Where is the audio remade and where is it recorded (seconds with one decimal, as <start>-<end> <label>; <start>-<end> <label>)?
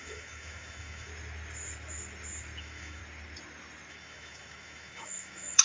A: 0.0-1.1 remade; 1.1-2.6 recorded; 2.6-3.0 remade; 3.0-3.9 recorded; 3.9-5.6 remade